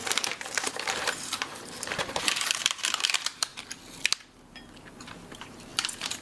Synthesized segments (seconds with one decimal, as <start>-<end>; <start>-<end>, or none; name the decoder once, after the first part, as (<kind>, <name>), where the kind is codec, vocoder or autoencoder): 0.0-3.5 (vocoder, BigVGAN v2); 4.9-6.2